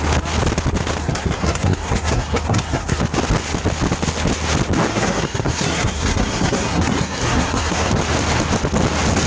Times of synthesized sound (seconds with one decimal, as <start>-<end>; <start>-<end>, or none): 1.0-3.0; 4.9-7.9